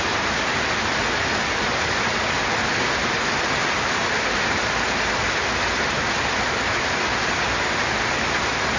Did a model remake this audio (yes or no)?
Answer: no